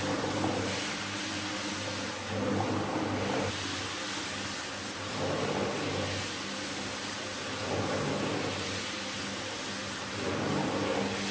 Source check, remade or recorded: recorded